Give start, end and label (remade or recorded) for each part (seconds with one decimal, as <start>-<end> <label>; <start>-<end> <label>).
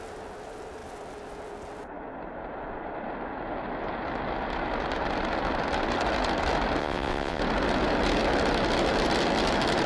0.0-6.8 recorded; 6.8-7.4 remade; 7.4-9.9 recorded